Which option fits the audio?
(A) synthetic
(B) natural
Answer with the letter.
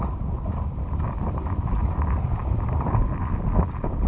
B